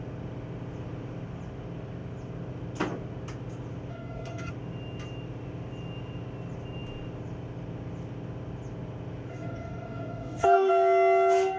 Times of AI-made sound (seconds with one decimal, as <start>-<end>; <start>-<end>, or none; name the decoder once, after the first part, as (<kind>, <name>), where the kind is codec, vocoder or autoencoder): 3.9-4.5 (codec, DAC); 9.3-10.7